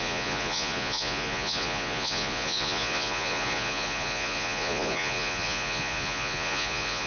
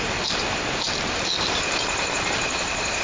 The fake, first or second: first